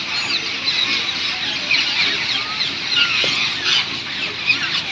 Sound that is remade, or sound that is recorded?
recorded